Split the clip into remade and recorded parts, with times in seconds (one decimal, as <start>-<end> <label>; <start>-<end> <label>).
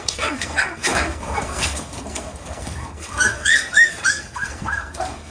0.0-5.3 remade